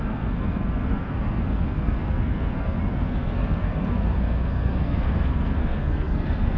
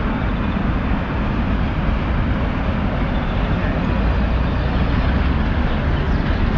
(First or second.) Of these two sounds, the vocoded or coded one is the first